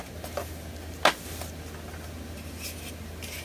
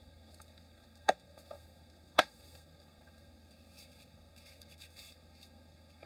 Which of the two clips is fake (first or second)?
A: second